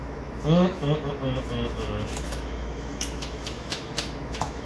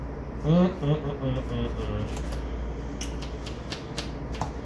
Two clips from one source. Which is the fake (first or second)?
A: first